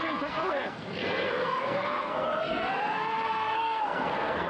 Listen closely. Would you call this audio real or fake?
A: fake